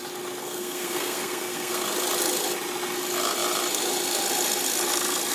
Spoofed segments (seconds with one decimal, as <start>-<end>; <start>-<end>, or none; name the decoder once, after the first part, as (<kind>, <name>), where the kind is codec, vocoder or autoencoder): 0.4-1.8 (codec, SNAC)